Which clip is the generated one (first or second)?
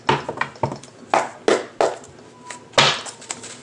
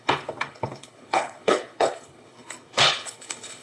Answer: second